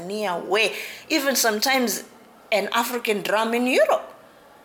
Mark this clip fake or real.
real